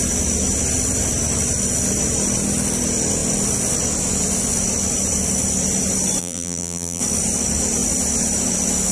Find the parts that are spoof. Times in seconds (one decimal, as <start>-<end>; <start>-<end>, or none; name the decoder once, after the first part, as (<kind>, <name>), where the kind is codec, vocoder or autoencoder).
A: 6.2-7.0 (vocoder, BigVGAN v2)